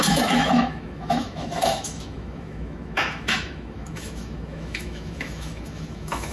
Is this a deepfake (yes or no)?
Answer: yes